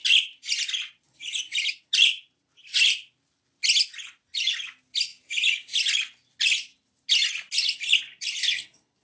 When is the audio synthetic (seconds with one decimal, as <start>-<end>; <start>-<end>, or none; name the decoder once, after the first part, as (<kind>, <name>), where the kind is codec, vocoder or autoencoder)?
none